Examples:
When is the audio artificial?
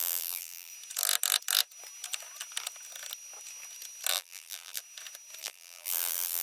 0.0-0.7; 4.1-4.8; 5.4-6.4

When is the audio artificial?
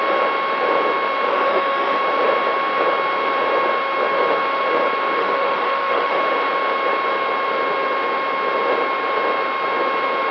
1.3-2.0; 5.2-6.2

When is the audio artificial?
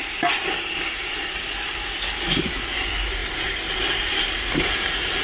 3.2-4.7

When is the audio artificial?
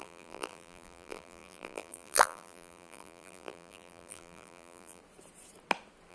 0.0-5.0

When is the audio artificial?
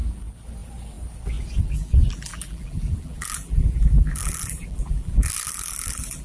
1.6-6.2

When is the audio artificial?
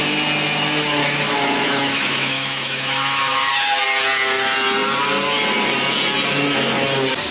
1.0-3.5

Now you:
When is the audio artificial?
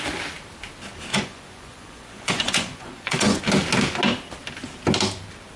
1.1-3.4